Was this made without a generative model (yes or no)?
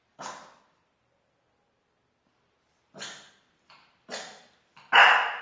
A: yes